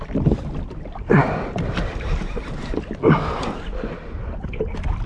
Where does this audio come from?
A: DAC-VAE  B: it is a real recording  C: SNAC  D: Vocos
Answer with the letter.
B